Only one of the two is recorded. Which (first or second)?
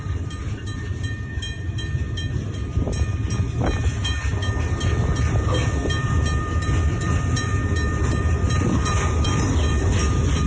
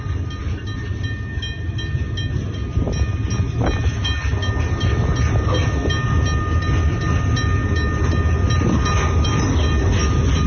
second